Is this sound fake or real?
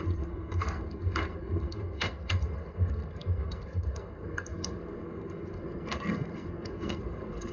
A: fake